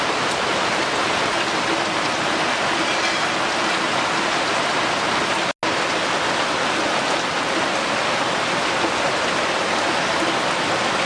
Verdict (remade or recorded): recorded